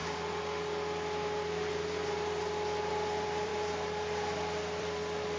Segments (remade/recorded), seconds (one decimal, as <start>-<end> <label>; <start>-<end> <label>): 0.0-2.9 recorded; 2.9-3.5 remade; 3.5-4.8 recorded; 4.8-5.4 remade